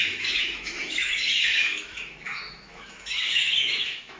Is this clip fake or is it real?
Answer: fake